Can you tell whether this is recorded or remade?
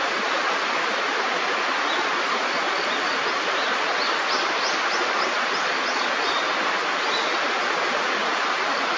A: recorded